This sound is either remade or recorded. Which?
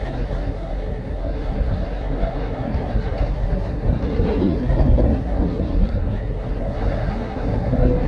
remade